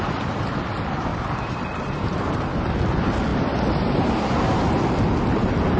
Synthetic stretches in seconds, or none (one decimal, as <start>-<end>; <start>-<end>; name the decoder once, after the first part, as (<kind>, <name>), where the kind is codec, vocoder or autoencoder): 1.1-2.4 (vocoder, BigVGAN v2)